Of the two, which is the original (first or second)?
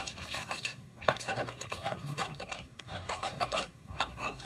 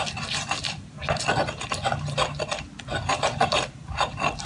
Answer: second